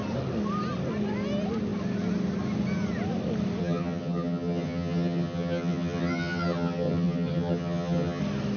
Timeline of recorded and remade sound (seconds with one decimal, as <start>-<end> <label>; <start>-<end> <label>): 0.0-3.6 recorded; 3.6-8.2 remade; 8.2-8.6 recorded